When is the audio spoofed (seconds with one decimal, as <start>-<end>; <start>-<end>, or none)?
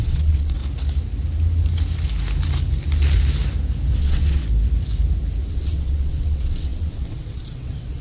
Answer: 0.0-0.6; 4.0-4.4; 5.5-8.0